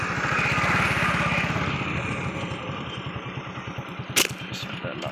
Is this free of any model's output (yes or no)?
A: yes